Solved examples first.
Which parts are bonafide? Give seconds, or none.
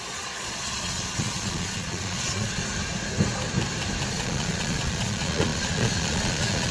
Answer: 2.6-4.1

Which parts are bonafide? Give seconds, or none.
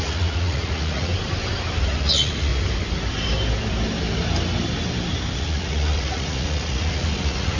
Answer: 1.1-2.0; 2.5-5.4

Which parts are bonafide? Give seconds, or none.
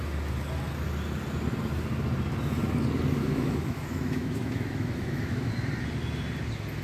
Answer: 0.0-3.2; 5.5-6.8